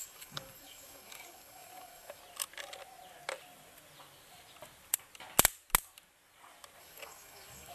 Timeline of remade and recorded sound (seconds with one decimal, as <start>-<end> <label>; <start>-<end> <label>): 0.0-2.2 remade; 2.2-6.8 recorded; 6.8-7.7 remade